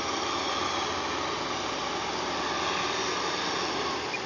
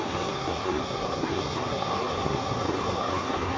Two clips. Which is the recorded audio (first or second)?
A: first